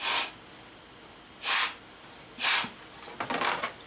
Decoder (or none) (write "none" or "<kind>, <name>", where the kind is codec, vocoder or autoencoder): none